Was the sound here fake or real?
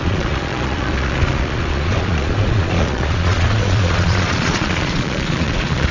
fake